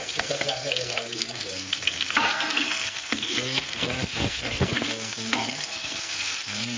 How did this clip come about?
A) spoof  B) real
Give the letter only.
A